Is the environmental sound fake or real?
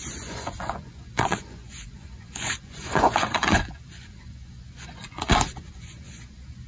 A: fake